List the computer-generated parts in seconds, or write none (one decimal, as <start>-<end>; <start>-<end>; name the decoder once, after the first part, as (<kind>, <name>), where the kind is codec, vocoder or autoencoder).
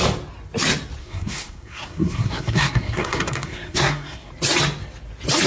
1.0-4.3 (codec, SNAC)